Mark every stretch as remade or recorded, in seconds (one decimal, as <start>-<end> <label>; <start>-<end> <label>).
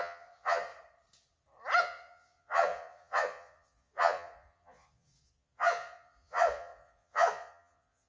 0.0-0.7 remade; 0.7-1.8 recorded; 1.8-8.1 remade